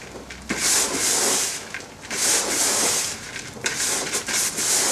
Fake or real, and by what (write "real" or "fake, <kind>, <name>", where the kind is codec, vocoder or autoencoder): real